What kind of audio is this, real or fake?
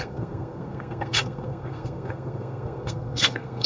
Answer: fake